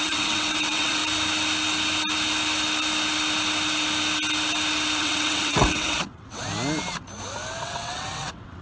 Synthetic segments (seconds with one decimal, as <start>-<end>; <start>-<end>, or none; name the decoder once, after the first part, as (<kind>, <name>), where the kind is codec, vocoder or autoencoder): 0.0-1.0 (vocoder, WaveNeXt); 5.0-6.4; 7.6-8.6